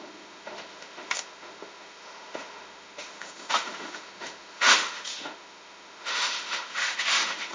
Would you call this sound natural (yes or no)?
no